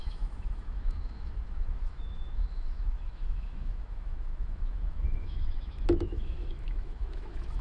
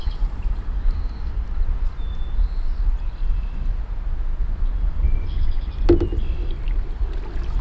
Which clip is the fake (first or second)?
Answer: first